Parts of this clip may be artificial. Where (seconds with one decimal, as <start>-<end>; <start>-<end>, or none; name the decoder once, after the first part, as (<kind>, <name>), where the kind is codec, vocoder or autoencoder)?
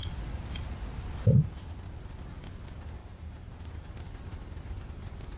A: 3.0-3.9 (vocoder, BigVGAN v2)